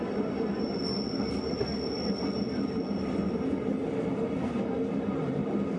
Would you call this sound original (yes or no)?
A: yes